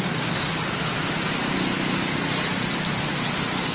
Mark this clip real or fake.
real